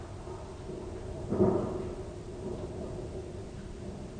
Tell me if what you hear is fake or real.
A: real